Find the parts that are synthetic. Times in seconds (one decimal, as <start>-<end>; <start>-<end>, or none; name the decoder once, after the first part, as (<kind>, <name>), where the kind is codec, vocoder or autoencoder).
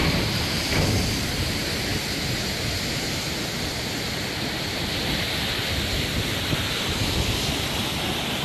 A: 0.0-1.4 (vocoder, BigVGAN v2)